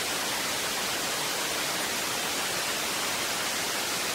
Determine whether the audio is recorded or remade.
recorded